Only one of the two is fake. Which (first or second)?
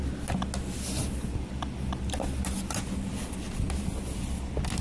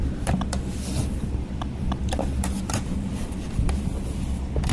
second